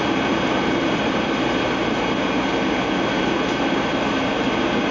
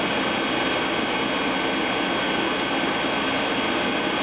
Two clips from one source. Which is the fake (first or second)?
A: first